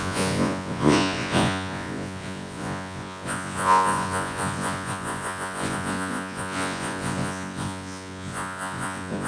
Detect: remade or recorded remade